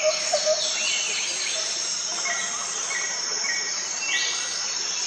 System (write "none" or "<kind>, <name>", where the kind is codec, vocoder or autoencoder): none